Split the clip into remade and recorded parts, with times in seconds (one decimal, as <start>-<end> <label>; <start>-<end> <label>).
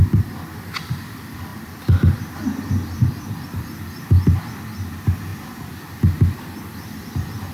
0.0-7.5 remade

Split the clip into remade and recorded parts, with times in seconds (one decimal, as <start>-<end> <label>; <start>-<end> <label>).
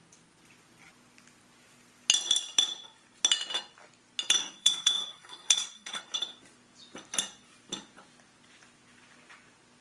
0.0-4.4 recorded; 4.4-6.0 remade; 6.0-9.8 recorded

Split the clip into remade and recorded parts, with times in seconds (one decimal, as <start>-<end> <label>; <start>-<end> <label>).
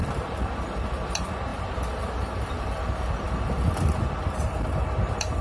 0.0-1.5 recorded; 1.5-4.6 remade; 4.6-5.4 recorded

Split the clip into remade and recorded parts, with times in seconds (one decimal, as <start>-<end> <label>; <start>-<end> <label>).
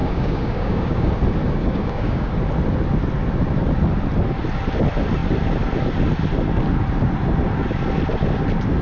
0.0-1.1 remade; 1.1-1.6 recorded; 1.6-2.3 remade; 2.3-8.8 recorded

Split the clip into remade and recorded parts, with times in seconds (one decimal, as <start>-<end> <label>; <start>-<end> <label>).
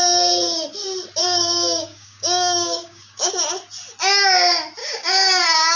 0.0-1.2 recorded; 1.2-3.3 remade; 3.3-4.8 recorded; 4.8-5.8 remade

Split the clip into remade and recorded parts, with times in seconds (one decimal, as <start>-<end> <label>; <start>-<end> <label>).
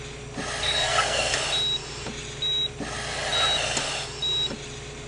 0.0-0.6 recorded; 0.6-1.4 remade; 1.4-5.1 recorded